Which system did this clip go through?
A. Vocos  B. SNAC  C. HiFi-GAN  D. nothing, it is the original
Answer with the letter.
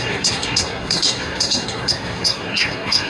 B